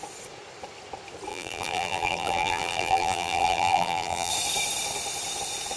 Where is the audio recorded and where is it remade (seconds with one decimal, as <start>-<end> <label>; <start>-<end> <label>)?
0.0-1.3 recorded; 1.3-4.3 remade; 4.3-5.8 recorded